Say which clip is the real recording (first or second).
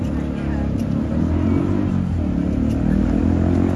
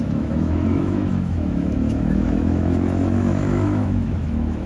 first